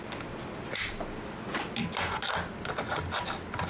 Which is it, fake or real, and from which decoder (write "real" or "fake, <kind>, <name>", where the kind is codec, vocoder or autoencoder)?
real